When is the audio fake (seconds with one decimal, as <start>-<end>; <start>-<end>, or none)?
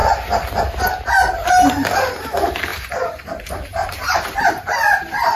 1.5-5.4